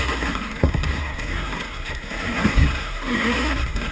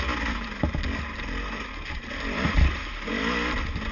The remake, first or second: first